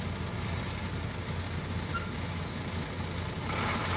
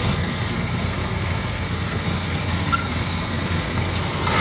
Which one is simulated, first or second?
second